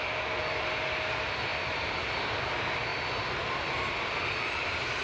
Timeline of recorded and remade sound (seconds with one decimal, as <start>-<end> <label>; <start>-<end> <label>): 0.0-1.5 remade; 1.5-2.4 recorded; 2.4-2.9 remade; 2.9-4.6 recorded; 4.6-5.0 remade